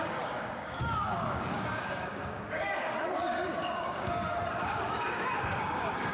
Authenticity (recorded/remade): remade